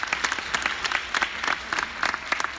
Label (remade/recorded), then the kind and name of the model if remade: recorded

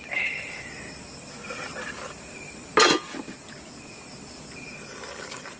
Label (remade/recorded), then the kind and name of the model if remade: recorded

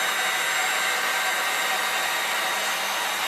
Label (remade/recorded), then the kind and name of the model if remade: recorded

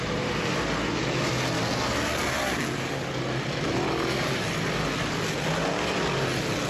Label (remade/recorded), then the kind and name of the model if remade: recorded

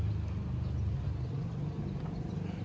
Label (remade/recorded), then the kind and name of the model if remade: recorded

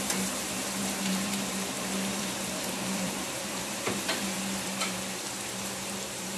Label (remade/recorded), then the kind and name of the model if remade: remade, vocoder, BigVGAN v2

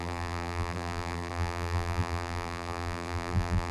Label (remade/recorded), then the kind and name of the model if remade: remade, vocoder, BigVGAN v2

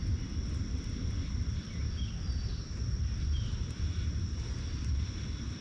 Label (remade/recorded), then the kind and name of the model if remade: recorded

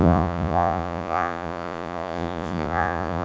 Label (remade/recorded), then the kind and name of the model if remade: remade, vocoder, Vocos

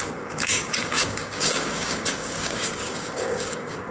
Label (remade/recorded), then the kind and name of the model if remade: remade, codec, DAC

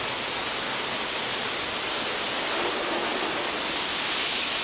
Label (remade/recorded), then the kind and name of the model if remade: recorded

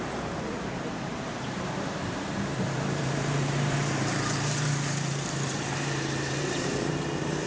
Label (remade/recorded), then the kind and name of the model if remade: remade, vocoder, BigVGAN v2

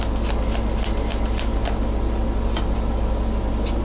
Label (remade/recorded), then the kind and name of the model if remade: recorded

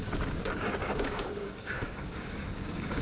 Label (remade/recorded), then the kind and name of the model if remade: remade, codec, DAC